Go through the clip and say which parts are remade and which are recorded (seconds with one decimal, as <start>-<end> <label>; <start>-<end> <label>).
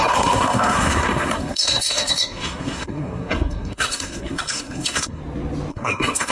0.0-5.2 remade; 5.2-5.7 recorded; 5.7-6.3 remade